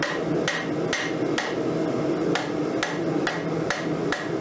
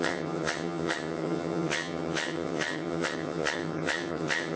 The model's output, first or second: second